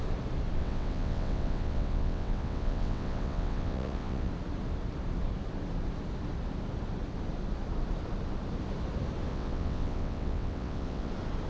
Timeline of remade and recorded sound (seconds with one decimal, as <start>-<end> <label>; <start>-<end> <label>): 0.0-0.6 recorded; 0.6-4.3 remade; 4.3-9.3 recorded; 9.3-11.1 remade; 11.1-11.5 recorded